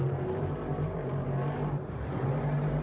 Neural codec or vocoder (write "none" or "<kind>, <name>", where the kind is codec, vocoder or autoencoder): vocoder, BigVGAN v2